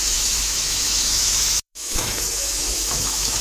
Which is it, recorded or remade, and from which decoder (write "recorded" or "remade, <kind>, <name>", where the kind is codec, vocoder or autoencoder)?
remade, autoencoder, DAC-VAE